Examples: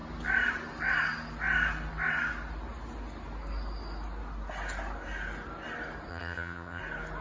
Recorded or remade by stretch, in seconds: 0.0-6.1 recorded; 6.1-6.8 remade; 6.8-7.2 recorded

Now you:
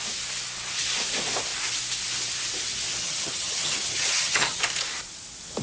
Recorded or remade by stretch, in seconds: 0.0-3.0 recorded; 3.0-4.6 remade; 4.6-5.6 recorded

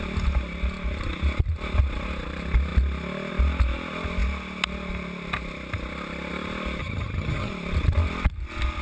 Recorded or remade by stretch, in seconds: 0.0-6.8 recorded; 6.8-7.5 remade; 7.5-8.8 recorded

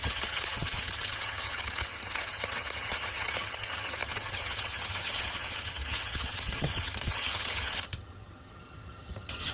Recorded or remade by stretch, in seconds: 0.0-9.5 remade

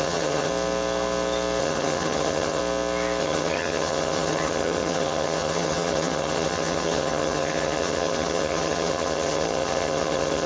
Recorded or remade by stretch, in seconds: 0.0-0.5 remade; 0.5-1.6 recorded; 1.6-2.6 remade; 2.6-3.2 recorded; 3.2-10.5 remade